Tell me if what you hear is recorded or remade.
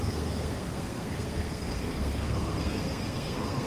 remade